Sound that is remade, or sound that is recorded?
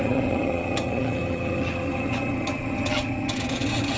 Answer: remade